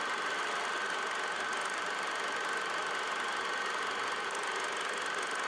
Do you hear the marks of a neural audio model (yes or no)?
no